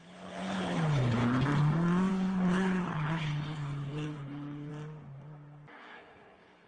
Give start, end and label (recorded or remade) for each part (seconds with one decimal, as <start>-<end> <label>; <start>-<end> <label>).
0.0-1.2 remade; 1.2-2.1 recorded; 2.1-4.7 remade; 4.7-5.7 recorded; 5.7-6.7 remade